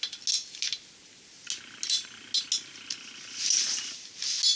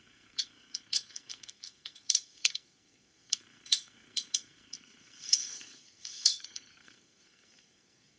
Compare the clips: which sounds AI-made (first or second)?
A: second